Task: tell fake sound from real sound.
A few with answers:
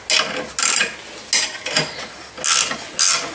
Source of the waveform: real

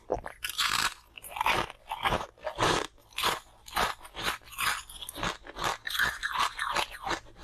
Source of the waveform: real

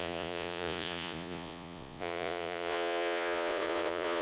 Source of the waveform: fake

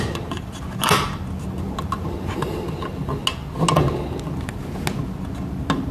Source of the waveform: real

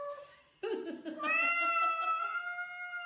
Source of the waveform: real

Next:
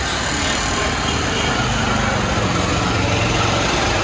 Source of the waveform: real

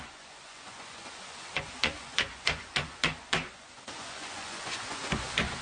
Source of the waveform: fake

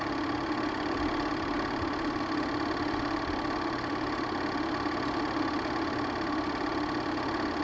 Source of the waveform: real